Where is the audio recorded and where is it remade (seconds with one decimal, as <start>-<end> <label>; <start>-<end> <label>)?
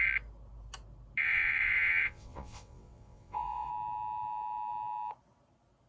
0.0-1.2 recorded; 1.2-3.7 remade; 3.7-5.9 recorded